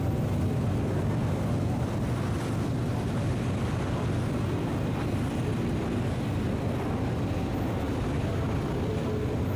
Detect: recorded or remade recorded